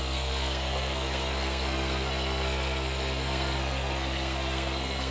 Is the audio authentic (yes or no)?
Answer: no